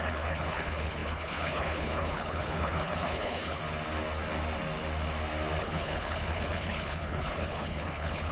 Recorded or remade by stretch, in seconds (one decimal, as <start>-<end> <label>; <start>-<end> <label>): 0.0-3.6 remade; 3.6-5.6 recorded; 5.6-8.3 remade